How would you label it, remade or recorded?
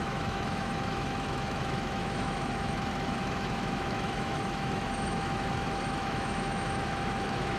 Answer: remade